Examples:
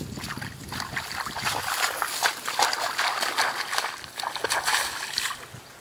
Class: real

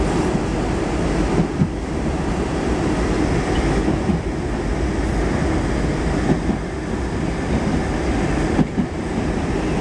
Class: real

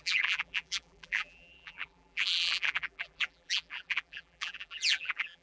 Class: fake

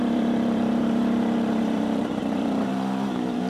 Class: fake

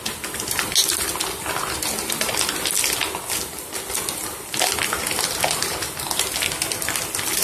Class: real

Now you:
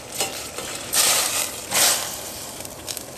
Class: real